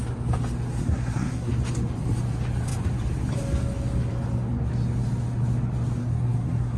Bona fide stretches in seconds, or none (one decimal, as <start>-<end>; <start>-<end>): 0.0-0.8; 1.5-6.0